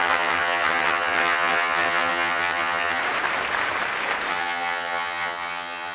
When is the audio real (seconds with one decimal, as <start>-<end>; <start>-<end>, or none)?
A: 3.0-4.3

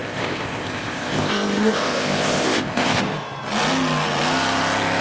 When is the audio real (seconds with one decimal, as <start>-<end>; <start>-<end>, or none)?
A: 3.0-5.0

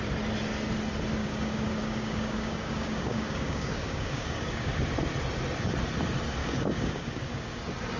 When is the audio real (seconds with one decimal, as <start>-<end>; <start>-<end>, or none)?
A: 0.0-1.2; 4.7-6.4; 7.6-8.0